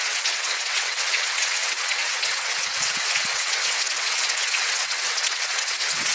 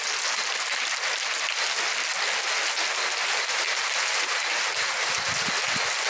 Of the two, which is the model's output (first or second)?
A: first